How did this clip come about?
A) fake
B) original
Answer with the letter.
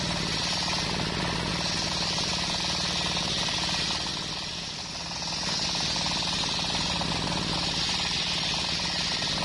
B